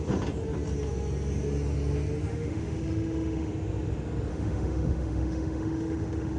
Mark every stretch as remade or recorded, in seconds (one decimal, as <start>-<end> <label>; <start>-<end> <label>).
0.0-2.3 recorded; 2.3-3.5 remade; 3.5-4.3 recorded; 4.3-6.4 remade